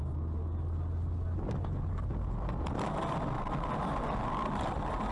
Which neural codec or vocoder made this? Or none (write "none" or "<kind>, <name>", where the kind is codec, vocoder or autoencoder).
none